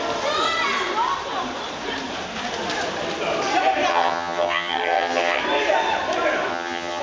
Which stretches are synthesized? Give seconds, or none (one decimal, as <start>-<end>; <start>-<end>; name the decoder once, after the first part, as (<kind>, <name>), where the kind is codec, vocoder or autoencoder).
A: 3.9-5.4 (vocoder, HiFi-GAN); 6.5-7.0